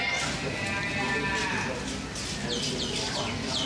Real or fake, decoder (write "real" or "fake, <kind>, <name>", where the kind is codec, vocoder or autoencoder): real